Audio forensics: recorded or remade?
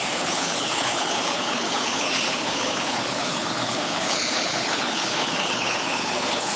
remade